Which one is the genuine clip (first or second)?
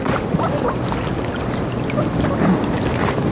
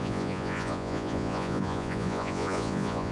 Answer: first